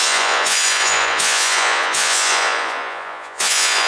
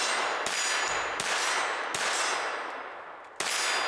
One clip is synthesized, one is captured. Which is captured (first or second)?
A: second